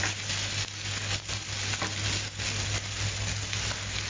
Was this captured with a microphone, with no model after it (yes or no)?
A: yes